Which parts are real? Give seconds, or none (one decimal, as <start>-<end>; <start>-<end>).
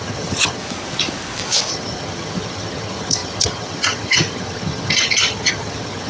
0.6-1.7